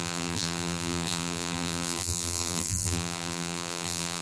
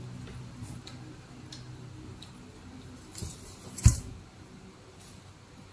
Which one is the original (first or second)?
second